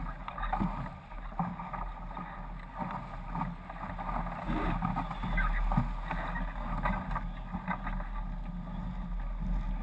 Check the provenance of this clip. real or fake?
real